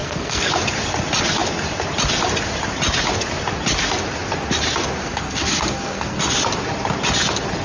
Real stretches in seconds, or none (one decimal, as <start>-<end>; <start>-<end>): 0.5-5.0; 6.2-7.6